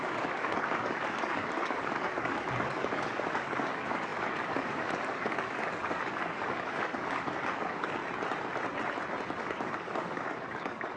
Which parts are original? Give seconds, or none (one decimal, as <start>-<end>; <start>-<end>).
8.0-9.4